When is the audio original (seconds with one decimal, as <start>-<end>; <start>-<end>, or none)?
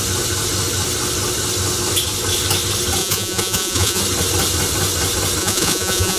0.0-3.0; 4.0-5.4